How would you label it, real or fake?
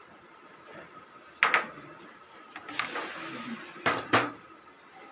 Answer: real